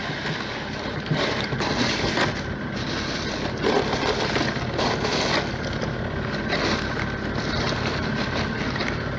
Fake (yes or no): no